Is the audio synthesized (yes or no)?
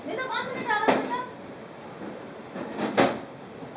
no